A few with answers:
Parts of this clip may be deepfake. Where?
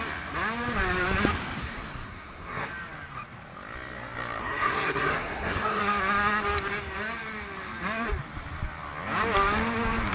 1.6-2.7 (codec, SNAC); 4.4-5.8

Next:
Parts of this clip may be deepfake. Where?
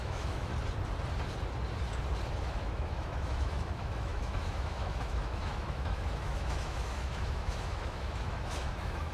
0.0-0.5 (autoencoder, DAC-VAE); 2.4-9.1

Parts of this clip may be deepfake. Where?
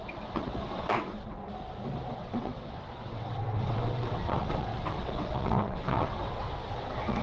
0.0-1.4 (vocoder, WaveNeXt); 2.1-7.2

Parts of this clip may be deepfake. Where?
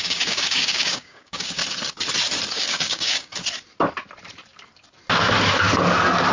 0.0-1.6 (codec, DAC); 2.5-3.3